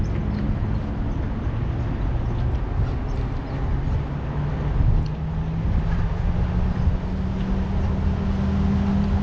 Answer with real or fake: real